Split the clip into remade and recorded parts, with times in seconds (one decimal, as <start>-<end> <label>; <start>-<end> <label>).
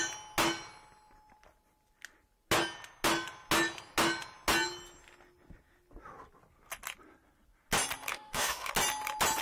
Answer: 0.0-8.1 recorded; 8.1-8.7 remade; 8.7-9.4 recorded